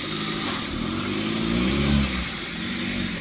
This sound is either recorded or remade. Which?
recorded